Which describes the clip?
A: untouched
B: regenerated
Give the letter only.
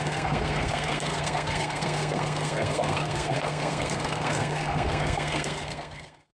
B